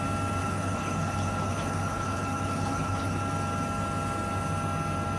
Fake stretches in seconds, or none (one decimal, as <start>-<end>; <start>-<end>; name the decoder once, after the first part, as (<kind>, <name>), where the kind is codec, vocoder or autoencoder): 0.4-3.2 (codec, HILCodec)